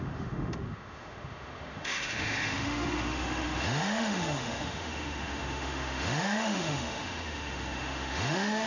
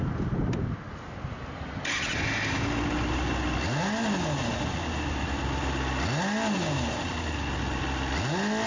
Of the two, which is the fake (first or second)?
first